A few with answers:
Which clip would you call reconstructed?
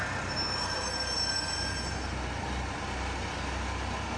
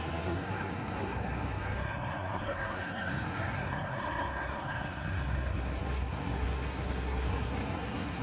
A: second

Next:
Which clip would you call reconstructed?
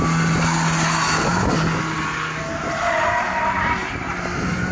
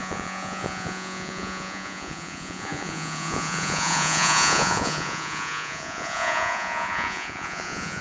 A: second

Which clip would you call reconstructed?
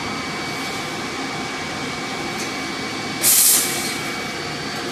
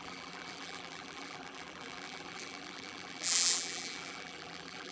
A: second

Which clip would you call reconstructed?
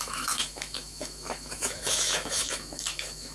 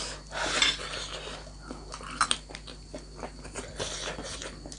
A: first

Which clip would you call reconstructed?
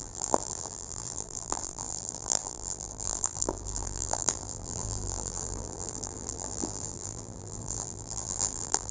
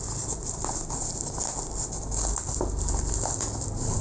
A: first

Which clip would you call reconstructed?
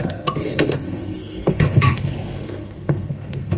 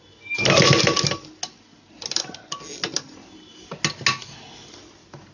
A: first